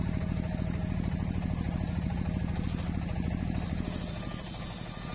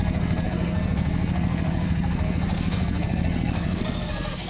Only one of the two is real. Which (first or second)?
first